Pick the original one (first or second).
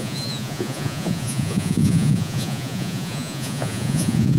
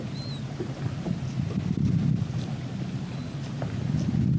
second